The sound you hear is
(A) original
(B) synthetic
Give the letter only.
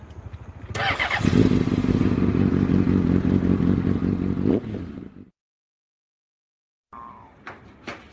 A